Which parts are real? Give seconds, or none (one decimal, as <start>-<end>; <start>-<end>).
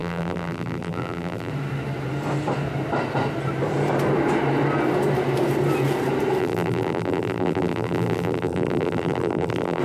1.5-6.4